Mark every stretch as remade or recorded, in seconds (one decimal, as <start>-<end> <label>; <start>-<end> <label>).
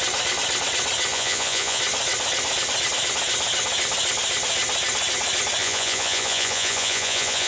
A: 0.0-1.1 recorded; 1.1-1.8 remade; 1.8-5.6 recorded; 5.6-7.5 remade